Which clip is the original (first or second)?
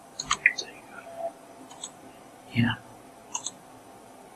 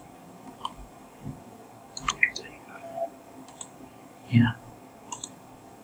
first